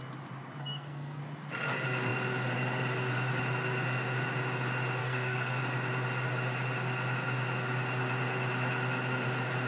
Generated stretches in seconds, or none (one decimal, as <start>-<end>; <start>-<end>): 0.6-1.2; 5.0-5.6